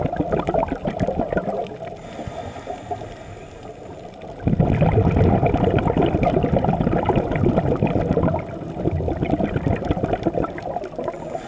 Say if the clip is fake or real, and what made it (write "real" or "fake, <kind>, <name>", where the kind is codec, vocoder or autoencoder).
real